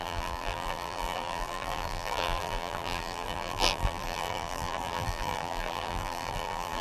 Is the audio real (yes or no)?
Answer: no